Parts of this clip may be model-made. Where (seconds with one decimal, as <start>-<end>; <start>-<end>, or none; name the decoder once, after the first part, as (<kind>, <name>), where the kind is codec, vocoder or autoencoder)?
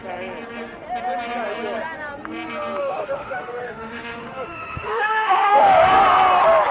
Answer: 2.8-5.9 (autoencoder, DAC-VAE)